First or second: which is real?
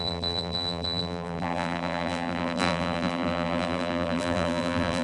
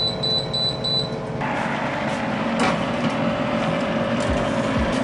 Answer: second